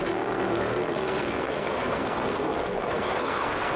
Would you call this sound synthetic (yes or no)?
yes